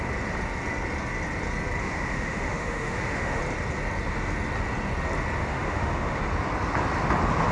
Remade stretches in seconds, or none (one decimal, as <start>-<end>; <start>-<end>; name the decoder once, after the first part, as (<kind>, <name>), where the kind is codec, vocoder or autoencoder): 1.8-3.4 (autoencoder, DAC-VAE); 5.4-6.2